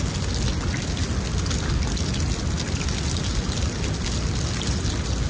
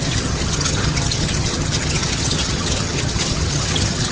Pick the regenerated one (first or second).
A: second